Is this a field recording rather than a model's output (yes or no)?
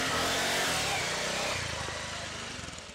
yes